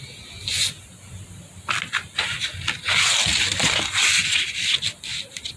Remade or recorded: recorded